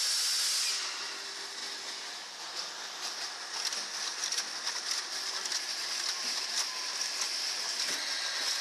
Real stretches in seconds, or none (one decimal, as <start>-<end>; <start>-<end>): 0.0-8.6